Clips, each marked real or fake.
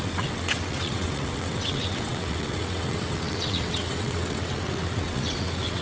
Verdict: fake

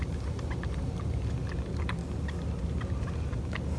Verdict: real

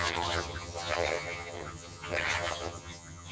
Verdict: fake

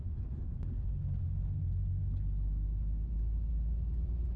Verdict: real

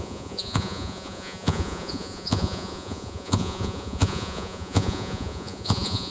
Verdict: fake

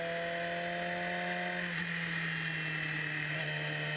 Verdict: real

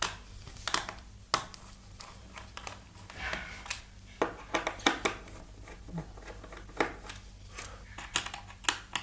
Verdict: real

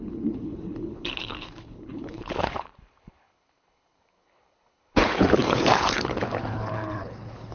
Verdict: fake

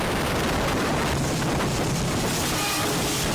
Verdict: real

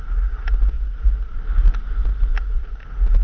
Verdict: real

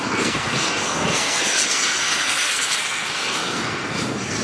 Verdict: fake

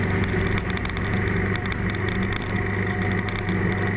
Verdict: real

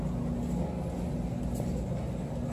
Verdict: real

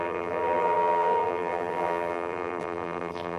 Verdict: fake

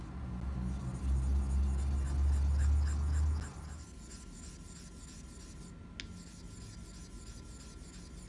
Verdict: real